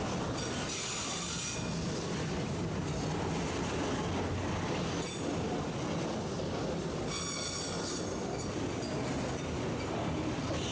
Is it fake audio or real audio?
real